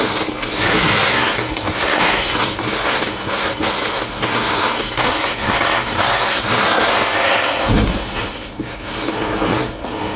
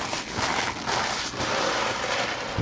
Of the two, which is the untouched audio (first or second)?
second